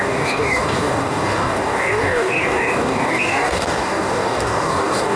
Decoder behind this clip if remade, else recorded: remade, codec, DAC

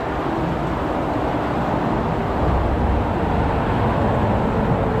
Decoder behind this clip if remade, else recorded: recorded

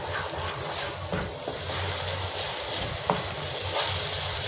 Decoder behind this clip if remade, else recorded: recorded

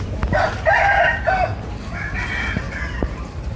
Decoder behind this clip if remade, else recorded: recorded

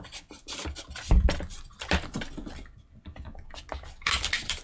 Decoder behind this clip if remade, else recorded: remade, vocoder, BigVGAN v2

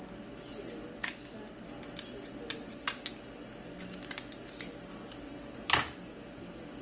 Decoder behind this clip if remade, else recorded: recorded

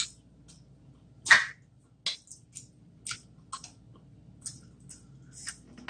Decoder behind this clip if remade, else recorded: recorded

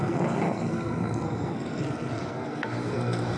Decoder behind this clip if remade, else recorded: remade, codec, SNAC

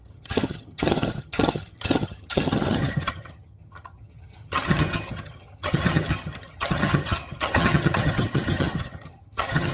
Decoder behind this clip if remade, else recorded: remade, vocoder, HiFi-GAN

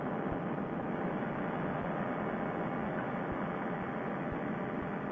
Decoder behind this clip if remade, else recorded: recorded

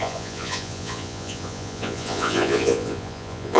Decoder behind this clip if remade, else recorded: remade, vocoder, Vocos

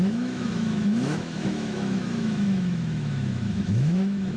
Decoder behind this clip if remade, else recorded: remade, autoencoder, DAC-VAE